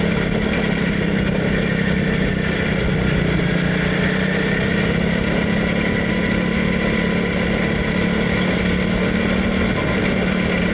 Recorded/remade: recorded